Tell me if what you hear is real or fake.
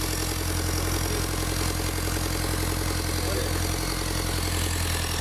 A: real